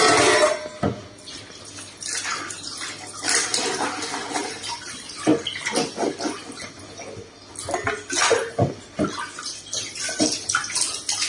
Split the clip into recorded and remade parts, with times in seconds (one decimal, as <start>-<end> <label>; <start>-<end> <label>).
0.0-11.3 recorded